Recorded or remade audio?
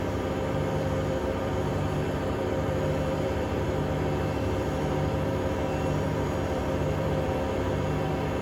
remade